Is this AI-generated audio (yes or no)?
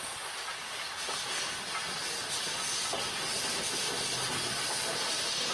no